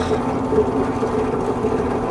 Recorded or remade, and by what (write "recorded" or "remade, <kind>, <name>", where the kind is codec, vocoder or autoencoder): recorded